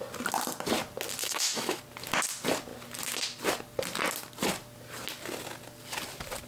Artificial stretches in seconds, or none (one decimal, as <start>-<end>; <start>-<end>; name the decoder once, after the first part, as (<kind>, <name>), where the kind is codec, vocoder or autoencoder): 1.2-1.8 (autoencoder, DAC-VAE)